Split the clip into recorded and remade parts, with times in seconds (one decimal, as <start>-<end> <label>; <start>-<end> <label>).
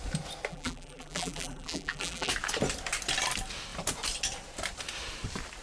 0.0-0.5 recorded; 0.5-2.3 remade; 2.3-5.6 recorded